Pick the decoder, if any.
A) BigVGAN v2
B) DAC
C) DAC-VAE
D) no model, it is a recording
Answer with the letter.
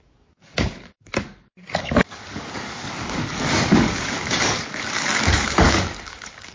B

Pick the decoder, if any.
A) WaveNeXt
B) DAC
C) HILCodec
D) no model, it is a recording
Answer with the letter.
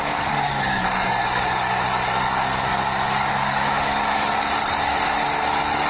B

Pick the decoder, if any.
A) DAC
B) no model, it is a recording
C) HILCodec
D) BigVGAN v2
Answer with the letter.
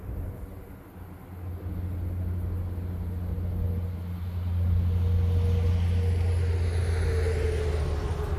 B